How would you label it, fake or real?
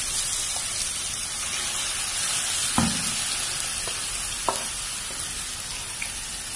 real